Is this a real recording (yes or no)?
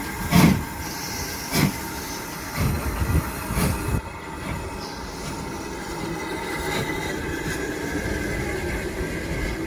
yes